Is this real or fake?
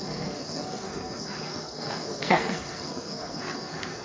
fake